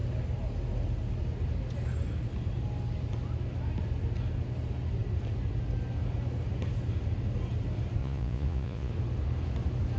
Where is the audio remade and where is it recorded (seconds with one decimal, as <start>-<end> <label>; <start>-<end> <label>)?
0.0-8.0 recorded; 8.0-8.9 remade; 8.9-10.0 recorded

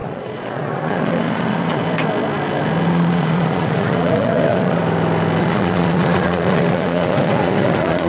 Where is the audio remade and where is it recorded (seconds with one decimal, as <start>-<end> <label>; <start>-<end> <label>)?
0.0-1.8 remade; 1.8-2.9 recorded; 2.9-4.8 remade; 4.8-5.4 recorded; 5.4-8.1 remade

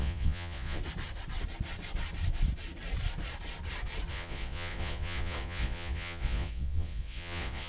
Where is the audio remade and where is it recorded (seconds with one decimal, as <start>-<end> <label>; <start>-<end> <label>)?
0.0-0.8 remade; 0.8-4.1 recorded; 4.1-7.7 remade

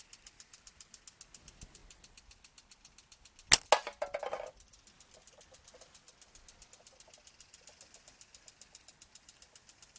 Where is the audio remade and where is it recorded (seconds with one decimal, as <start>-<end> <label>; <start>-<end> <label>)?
0.0-10.0 recorded

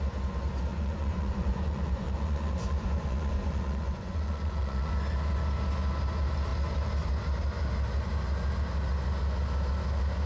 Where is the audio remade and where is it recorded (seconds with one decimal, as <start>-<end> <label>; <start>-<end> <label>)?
0.0-0.7 recorded; 0.7-4.9 remade; 4.9-10.3 recorded

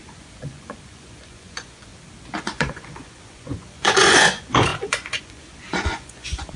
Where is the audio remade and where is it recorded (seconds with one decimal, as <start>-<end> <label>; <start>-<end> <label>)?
0.0-1.9 remade; 1.9-2.4 recorded; 2.4-6.6 remade

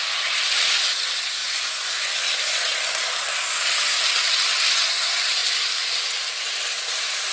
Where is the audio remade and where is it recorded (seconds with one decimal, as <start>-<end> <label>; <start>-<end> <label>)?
0.0-1.4 recorded; 1.4-2.1 remade; 2.1-7.3 recorded

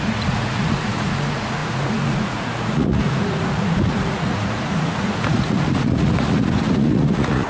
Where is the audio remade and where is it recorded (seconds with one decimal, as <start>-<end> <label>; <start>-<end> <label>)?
0.0-7.5 remade